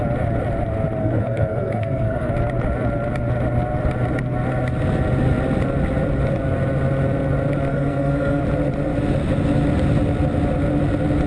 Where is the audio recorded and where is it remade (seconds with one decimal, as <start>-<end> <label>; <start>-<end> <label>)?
0.0-1.0 recorded; 1.0-2.3 remade; 2.3-7.7 recorded; 7.7-8.4 remade; 8.4-11.3 recorded